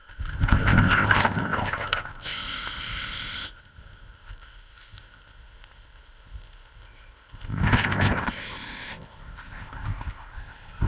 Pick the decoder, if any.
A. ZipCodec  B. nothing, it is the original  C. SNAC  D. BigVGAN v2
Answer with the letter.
A